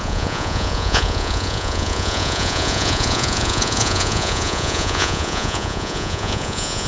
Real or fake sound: fake